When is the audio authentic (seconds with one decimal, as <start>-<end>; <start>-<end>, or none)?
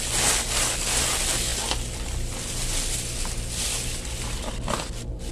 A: 0.0-5.3